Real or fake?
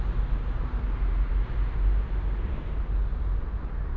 real